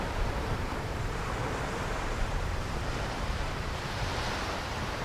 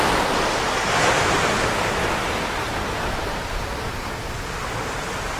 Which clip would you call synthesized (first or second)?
first